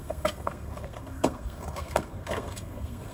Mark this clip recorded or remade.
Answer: remade